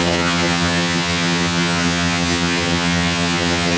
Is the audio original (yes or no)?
no